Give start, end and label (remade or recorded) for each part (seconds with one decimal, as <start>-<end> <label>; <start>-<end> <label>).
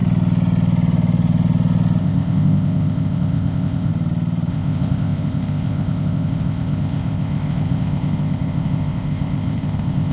0.0-2.0 recorded; 2.0-3.9 remade; 3.9-4.5 recorded; 4.5-10.1 remade